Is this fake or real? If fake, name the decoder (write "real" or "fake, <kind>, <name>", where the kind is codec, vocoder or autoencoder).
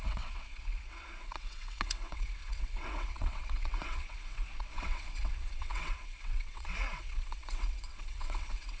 fake, vocoder, WaveNeXt